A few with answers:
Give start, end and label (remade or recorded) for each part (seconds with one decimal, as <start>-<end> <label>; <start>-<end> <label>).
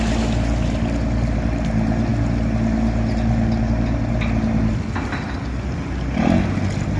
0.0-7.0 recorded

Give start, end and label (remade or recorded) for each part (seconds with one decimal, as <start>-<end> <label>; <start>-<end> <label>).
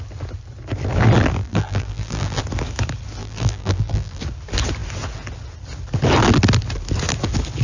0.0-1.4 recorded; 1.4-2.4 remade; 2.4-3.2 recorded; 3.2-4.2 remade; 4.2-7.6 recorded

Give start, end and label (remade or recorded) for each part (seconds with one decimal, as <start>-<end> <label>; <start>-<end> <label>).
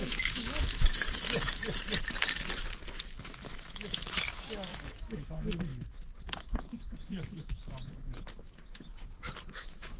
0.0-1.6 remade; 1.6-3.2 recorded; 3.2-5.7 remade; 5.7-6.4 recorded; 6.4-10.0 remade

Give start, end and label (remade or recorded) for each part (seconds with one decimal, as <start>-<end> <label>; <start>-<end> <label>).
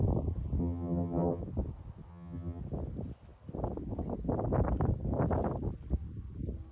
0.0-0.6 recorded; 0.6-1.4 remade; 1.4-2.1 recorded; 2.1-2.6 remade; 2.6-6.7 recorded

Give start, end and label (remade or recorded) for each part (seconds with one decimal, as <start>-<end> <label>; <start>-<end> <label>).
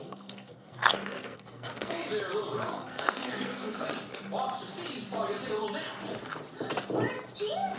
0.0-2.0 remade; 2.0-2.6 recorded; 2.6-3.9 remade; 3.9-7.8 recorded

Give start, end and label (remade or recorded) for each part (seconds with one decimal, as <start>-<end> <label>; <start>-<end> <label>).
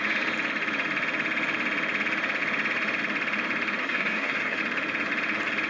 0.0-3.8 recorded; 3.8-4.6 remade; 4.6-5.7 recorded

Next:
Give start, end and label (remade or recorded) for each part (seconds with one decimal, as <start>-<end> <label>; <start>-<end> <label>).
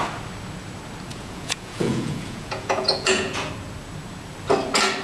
0.0-1.1 recorded; 1.1-3.5 remade; 3.5-5.0 recorded